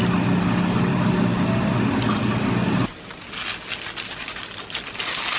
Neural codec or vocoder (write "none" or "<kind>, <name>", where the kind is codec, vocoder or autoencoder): none